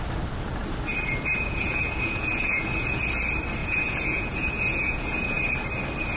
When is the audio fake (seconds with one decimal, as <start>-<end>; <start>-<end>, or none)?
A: 1.3-3.0; 3.6-5.4